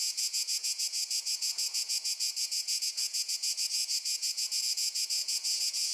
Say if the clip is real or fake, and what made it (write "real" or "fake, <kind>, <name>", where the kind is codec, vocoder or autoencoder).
fake, vocoder, Vocos